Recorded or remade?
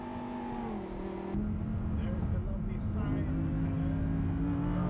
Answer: recorded